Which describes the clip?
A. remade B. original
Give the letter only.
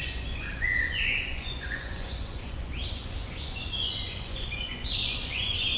A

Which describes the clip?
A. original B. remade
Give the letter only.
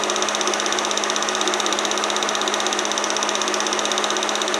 A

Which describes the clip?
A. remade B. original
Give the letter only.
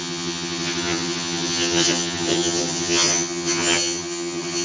A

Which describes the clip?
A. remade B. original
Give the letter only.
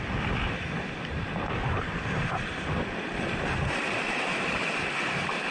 A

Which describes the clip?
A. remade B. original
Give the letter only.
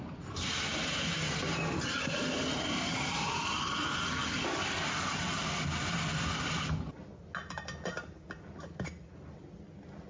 B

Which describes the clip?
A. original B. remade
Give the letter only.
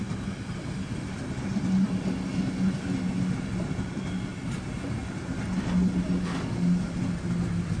A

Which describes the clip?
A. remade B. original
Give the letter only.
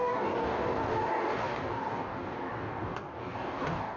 A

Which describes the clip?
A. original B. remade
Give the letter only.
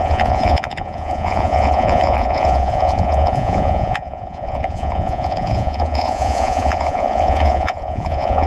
B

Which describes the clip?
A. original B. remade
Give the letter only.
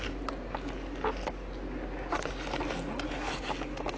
A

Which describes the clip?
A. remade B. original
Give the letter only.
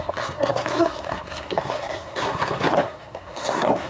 A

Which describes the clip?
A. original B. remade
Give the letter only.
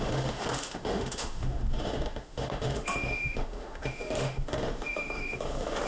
B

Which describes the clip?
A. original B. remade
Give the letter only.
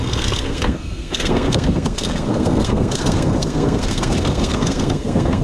B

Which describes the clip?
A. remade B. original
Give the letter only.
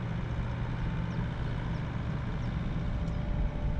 B